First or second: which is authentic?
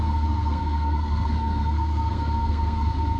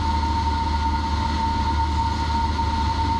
second